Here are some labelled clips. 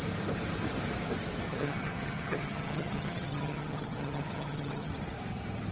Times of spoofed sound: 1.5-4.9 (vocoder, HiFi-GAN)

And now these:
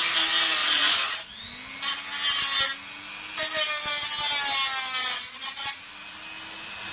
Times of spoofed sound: 0.6-1.3 (vocoder, Vocos); 5.0-5.8

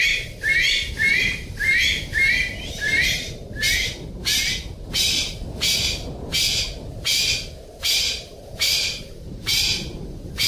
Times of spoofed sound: 0.0-3.4 (vocoder, BigVGAN v2); 7.9-10.5

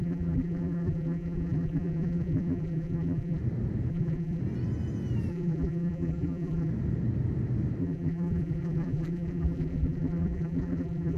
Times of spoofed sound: 0.0-3.4 (vocoder, BigVGAN v2); 3.9-4.4; 5.3-6.7; 7.8-11.2

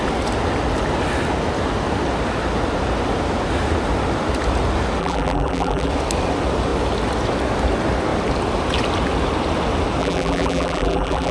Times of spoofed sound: 5.0-5.9 (vocoder, BigVGAN v2); 10.0-11.3

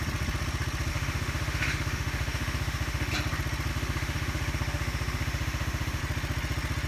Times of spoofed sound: 0.9-3.1 (autoencoder, DAC-VAE); 3.7-6.0

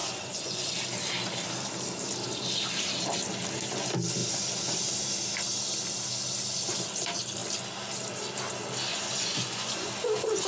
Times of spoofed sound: 0.0-0.7 (vocoder, Vocos); 8.9-9.9